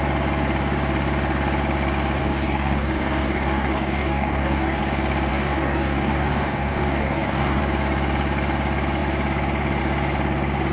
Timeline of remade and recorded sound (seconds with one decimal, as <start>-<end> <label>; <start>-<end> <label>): 0.0-2.2 recorded; 2.2-4.8 remade; 4.8-5.3 recorded; 5.3-7.6 remade; 7.6-10.7 recorded